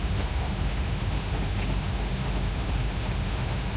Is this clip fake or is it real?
fake